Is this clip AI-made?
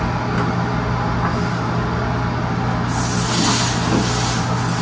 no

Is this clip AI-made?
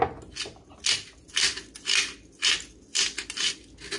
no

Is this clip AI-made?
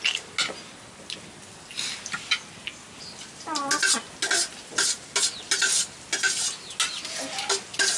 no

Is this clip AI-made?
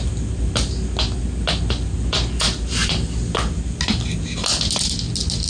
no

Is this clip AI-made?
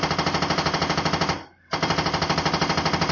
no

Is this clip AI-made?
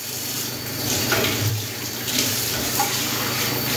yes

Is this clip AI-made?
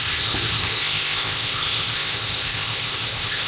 yes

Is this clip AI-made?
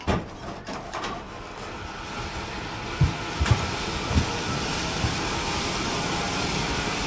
yes